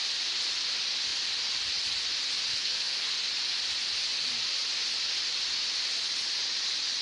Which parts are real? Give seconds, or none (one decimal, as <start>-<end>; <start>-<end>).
0.0-2.5; 3.1-7.0